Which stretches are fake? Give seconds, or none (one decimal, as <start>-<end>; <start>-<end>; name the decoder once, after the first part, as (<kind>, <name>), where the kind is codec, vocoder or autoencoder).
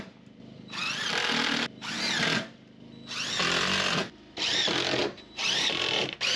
5.0-6.4 (vocoder, BigVGAN v2)